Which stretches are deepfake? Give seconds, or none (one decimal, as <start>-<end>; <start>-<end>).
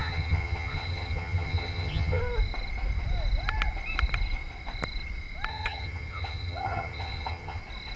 0.0-2.2; 5.5-7.6